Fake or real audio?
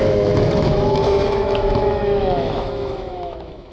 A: fake